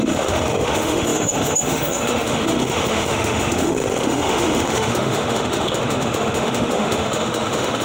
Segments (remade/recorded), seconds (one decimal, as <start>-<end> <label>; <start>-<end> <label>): 0.0-7.8 remade